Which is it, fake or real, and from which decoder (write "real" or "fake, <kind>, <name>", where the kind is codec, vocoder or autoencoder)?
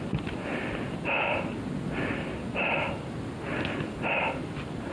real